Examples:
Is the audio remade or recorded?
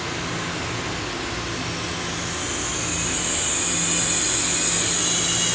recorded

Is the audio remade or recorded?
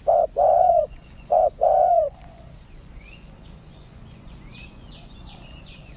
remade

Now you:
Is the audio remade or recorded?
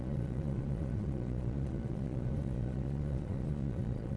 remade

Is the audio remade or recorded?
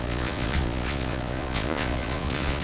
remade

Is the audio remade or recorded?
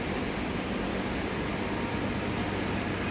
recorded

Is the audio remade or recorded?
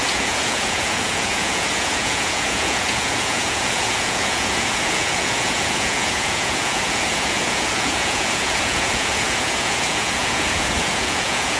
remade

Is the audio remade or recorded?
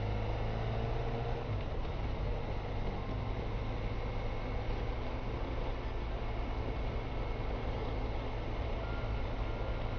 recorded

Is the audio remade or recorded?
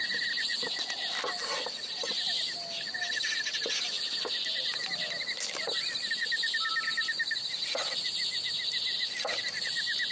recorded